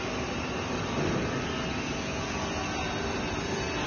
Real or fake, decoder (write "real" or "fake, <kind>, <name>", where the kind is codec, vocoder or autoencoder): real